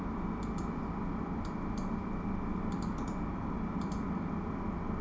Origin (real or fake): real